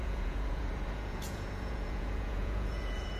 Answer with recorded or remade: remade